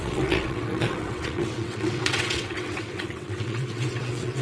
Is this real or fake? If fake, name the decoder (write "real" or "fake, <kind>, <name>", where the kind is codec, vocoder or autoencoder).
fake, vocoder, WaveNeXt